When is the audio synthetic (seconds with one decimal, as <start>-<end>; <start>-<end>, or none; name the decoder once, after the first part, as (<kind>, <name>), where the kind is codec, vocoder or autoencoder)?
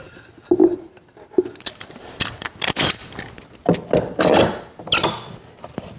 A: 0.6-2.6 (vocoder, BigVGAN v2)